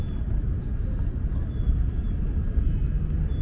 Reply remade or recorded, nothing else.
recorded